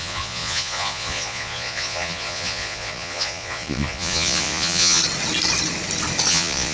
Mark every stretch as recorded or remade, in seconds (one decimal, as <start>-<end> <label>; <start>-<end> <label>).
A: 0.0-5.0 remade; 5.0-6.3 recorded; 6.3-6.7 remade